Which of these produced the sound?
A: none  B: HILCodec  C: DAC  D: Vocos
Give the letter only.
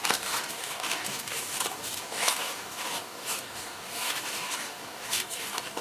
C